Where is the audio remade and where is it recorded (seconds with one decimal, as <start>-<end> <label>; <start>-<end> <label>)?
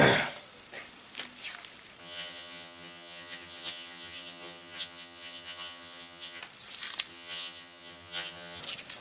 0.0-2.0 recorded; 2.0-6.4 remade; 6.4-7.1 recorded; 7.1-8.6 remade; 8.6-9.0 recorded